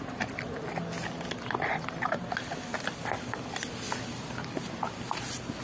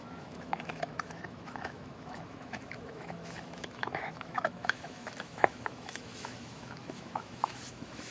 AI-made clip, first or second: second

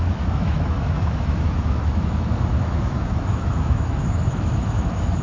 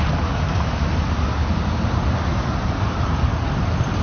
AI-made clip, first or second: first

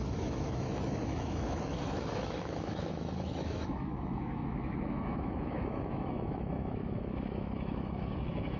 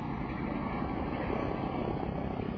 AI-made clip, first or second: first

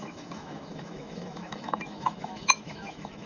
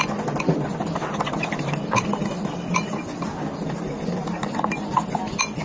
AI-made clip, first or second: first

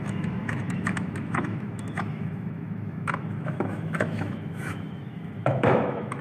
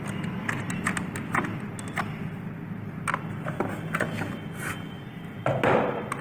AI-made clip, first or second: first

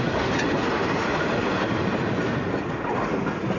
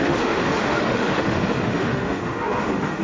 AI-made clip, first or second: second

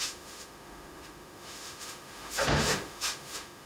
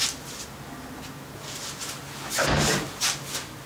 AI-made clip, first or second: first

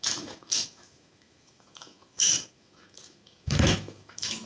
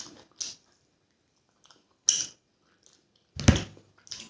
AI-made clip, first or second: first